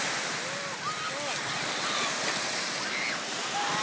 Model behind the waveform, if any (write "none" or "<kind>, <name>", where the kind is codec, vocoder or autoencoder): none